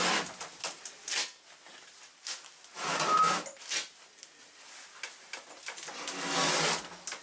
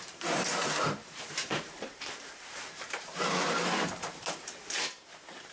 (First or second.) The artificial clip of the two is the second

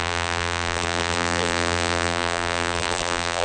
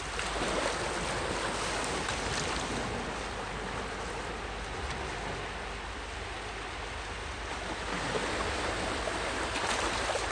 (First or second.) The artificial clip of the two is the first